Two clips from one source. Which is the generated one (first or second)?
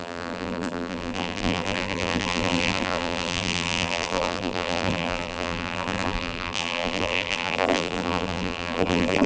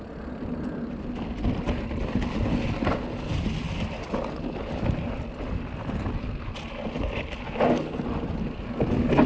first